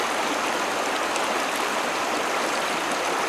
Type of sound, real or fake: real